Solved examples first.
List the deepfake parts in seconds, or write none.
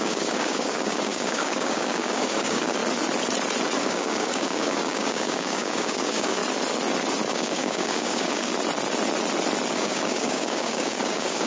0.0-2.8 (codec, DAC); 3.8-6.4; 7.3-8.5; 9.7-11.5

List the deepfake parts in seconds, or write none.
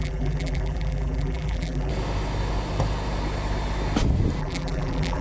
0.0-1.9 (vocoder, BigVGAN v2); 4.4-5.2